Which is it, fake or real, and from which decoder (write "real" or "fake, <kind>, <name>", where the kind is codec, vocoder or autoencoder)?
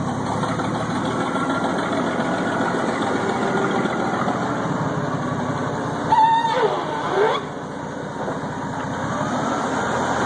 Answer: real